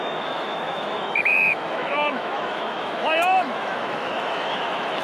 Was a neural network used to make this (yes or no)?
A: yes